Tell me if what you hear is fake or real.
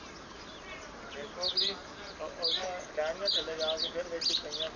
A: real